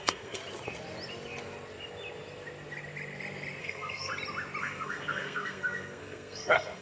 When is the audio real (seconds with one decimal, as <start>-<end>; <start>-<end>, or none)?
0.4-3.6; 4.1-4.6